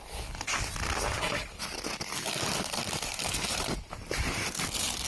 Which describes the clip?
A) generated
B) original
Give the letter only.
B